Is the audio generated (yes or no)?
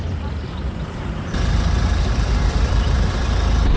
yes